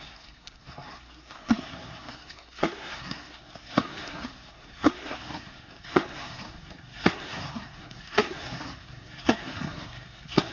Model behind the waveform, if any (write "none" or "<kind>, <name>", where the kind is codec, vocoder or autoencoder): codec, SNAC